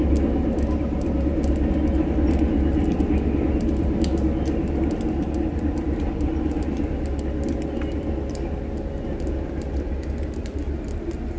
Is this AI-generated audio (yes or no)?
no